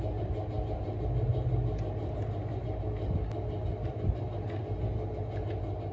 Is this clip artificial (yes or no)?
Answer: no